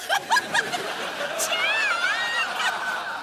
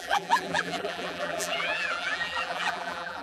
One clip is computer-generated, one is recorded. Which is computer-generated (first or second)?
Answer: second